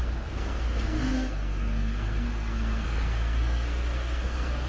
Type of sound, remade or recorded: remade